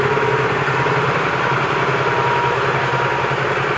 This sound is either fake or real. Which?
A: real